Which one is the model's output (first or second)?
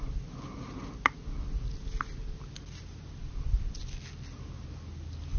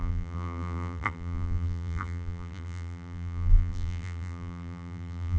second